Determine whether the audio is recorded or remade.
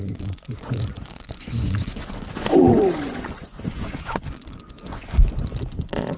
remade